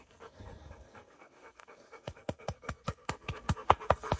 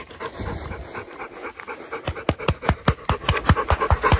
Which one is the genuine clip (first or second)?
second